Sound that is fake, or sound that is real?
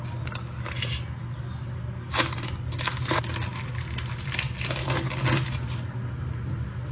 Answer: real